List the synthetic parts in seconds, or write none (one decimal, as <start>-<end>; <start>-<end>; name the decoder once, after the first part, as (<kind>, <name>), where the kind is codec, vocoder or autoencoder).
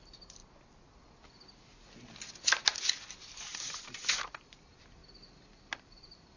0.0-0.4 (vocoder, BigVGAN v2); 2.6-5.0; 5.6-6.4